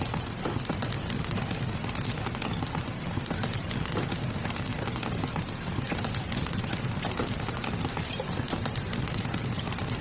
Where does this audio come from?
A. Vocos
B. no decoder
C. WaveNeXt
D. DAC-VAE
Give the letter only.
B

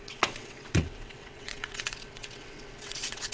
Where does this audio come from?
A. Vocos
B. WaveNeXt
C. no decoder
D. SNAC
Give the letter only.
B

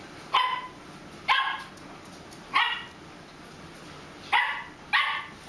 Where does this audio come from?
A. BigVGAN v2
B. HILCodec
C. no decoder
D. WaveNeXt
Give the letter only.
C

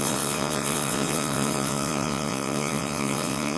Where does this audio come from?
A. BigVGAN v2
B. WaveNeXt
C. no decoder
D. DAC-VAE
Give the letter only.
B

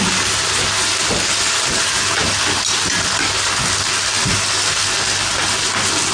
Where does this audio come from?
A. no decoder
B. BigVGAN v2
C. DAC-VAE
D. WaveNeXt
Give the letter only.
A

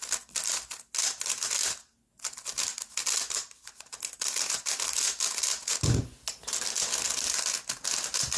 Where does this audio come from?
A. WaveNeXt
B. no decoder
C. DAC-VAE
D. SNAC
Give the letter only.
B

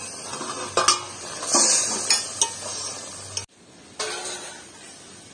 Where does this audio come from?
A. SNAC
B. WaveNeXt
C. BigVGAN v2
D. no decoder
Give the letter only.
D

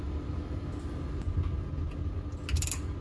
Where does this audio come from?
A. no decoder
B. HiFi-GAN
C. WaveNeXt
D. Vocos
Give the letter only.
A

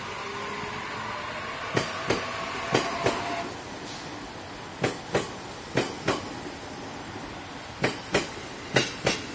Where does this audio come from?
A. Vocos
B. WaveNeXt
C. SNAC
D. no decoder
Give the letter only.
D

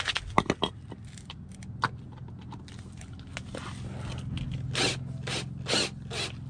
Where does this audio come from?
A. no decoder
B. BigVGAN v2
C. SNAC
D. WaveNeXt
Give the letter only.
A